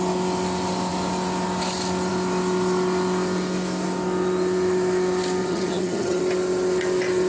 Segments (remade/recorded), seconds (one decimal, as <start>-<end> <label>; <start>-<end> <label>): 0.0-5.4 recorded; 5.4-6.2 remade; 6.2-7.3 recorded